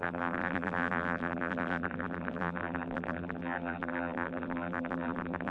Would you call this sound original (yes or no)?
no